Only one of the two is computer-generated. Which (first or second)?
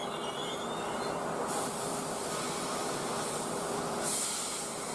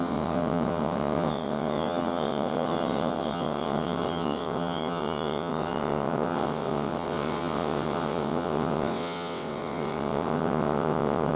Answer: second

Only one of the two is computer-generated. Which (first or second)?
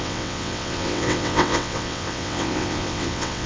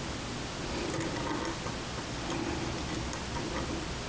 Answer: first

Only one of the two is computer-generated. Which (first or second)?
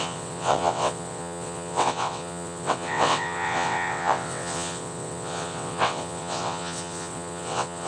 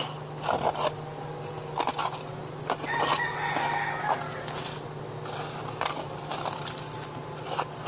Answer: first